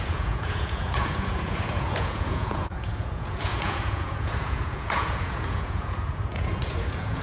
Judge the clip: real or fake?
fake